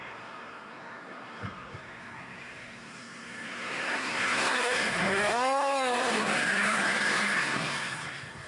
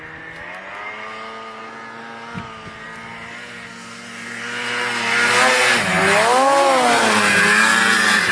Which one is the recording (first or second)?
second